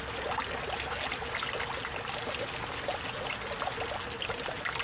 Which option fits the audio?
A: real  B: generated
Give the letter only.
A